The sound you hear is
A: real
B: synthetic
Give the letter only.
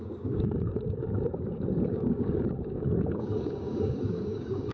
B